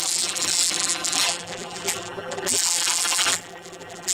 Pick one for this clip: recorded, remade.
remade